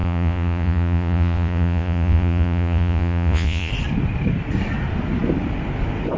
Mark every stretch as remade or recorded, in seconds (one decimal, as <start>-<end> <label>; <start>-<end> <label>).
0.0-3.7 remade; 3.7-6.2 recorded